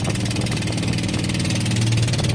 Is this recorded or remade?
recorded